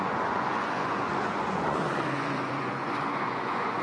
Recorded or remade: remade